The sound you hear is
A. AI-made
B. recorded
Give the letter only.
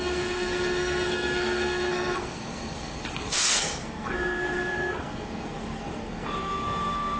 A